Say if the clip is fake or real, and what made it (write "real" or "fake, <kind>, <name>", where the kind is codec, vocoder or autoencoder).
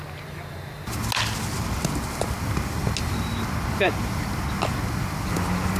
real